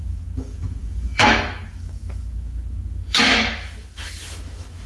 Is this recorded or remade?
remade